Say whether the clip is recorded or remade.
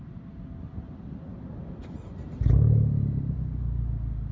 recorded